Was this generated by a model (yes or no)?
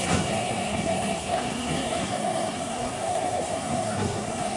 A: yes